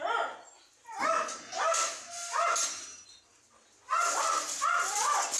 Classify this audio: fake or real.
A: real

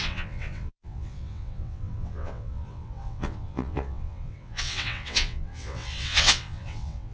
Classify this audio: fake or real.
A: fake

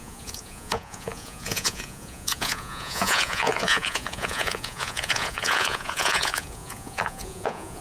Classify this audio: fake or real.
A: fake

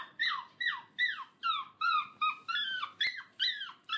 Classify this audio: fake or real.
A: real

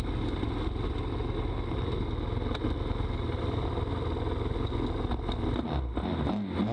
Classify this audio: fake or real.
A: real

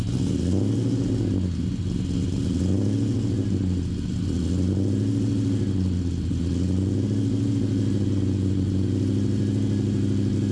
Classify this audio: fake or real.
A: real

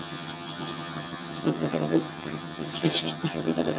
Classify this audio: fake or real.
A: fake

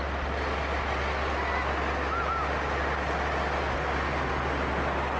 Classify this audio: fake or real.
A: real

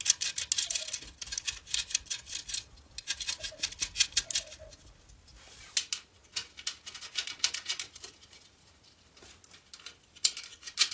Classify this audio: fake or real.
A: real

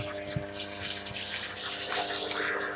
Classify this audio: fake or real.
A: real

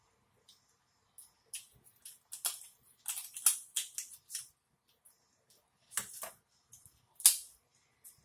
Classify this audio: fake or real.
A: real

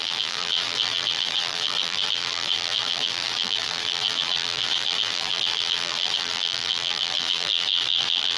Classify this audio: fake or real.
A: fake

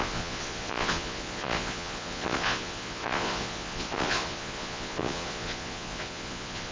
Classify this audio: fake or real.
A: fake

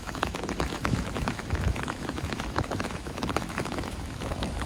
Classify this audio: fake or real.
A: fake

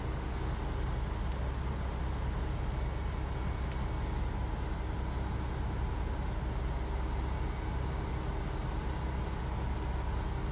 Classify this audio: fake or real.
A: real